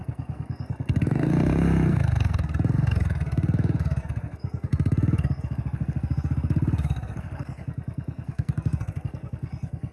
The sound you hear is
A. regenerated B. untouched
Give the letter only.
A